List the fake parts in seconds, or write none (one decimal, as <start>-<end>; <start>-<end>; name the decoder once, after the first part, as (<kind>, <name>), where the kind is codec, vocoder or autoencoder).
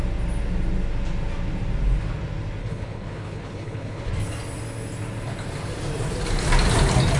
2.6-4.1 (codec, HILCodec)